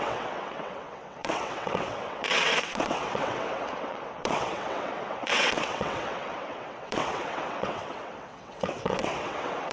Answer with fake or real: fake